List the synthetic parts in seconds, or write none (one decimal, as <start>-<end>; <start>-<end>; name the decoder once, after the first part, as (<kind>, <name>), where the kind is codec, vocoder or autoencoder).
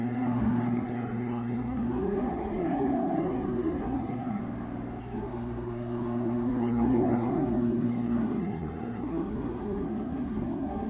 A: 0.0-4.4 (codec, SNAC); 5.0-10.9